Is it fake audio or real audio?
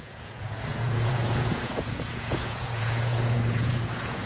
fake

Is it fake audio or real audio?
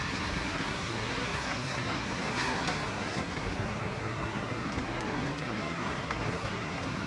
fake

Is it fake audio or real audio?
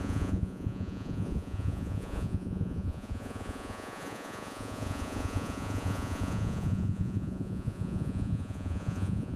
fake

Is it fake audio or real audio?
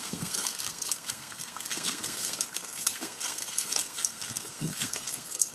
fake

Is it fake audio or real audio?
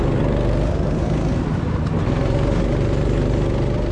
real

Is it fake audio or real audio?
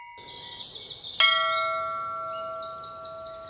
real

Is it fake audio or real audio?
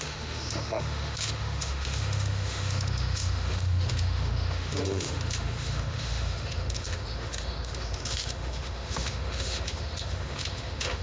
fake